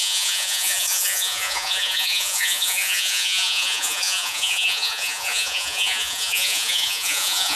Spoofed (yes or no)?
yes